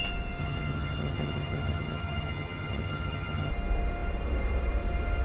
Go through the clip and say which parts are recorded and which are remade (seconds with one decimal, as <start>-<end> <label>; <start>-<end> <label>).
0.0-0.4 recorded; 0.4-3.5 remade; 3.5-5.2 recorded